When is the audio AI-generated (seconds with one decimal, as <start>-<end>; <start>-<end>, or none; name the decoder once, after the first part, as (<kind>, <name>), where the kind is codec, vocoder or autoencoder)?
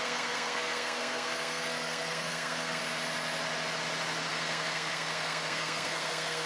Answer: 0.0-2.8 (codec, SNAC); 4.3-6.5